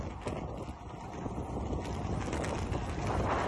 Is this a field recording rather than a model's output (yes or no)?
yes